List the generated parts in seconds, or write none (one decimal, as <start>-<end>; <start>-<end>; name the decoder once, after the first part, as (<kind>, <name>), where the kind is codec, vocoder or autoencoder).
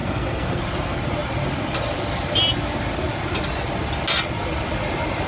0.0-0.6 (codec, SNAC)